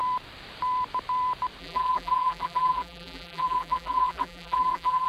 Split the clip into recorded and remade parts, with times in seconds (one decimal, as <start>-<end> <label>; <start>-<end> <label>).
0.0-1.6 recorded; 1.6-5.1 remade